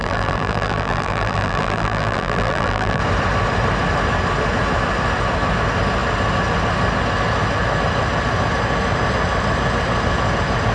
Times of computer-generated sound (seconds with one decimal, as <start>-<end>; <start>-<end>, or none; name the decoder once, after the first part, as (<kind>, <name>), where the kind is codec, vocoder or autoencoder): 0.0-3.0 (vocoder, BigVGAN v2)